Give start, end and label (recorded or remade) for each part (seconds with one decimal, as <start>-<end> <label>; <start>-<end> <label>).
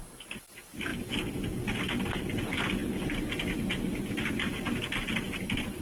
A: 0.0-5.8 recorded